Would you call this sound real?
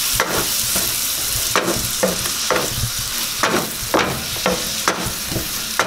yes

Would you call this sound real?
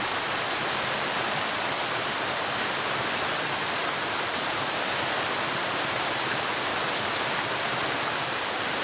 yes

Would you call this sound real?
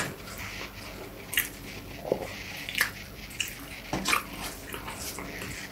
yes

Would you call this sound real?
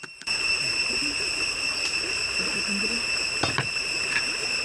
no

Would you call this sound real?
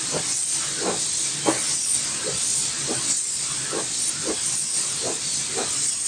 yes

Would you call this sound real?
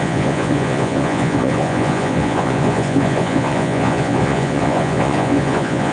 no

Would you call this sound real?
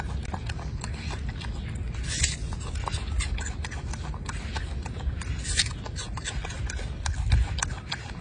yes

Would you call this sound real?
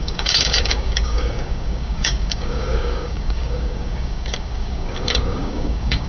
no